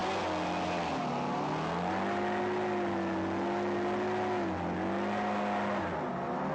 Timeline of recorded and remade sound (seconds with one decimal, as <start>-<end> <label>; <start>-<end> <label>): 0.0-6.5 recorded